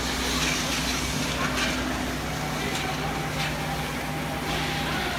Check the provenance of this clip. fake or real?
real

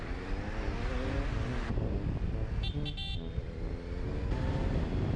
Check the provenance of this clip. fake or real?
real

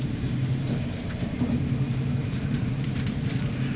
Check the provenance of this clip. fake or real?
fake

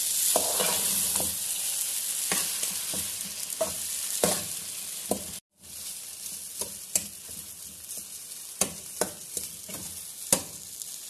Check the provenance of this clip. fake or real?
real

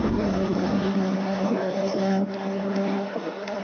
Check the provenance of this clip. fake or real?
fake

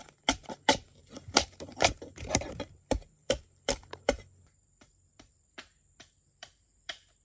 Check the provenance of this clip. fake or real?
fake